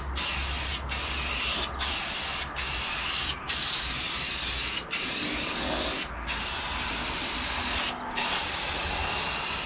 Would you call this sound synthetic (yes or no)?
no